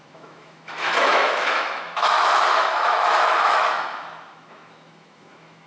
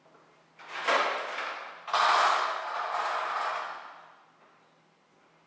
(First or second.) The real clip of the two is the second